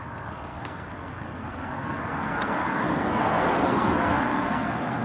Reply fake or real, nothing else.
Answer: fake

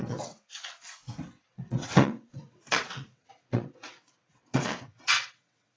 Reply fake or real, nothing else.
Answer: fake